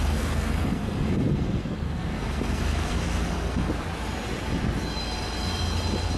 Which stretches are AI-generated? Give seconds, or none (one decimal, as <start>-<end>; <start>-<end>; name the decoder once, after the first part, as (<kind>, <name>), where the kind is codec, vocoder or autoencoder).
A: 0.0-3.7 (codec, SNAC)